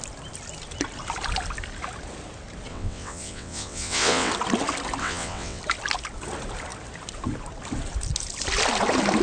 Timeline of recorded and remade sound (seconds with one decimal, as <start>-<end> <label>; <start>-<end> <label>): 0.0-2.7 recorded; 2.7-4.3 remade; 4.3-5.0 recorded; 5.0-5.6 remade; 5.6-9.2 recorded